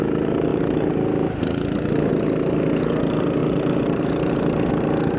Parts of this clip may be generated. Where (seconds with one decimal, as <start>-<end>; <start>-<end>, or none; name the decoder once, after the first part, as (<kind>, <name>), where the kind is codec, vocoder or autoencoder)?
0.5-2.1 (vocoder, BigVGAN v2); 3.4-4.7